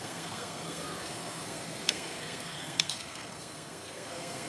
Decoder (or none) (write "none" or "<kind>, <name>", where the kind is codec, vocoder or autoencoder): codec, SNAC